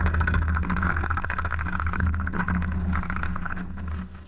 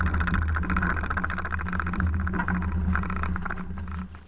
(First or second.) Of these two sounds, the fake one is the first